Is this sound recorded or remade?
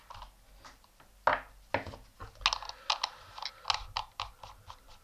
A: recorded